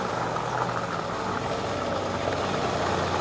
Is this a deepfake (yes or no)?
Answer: no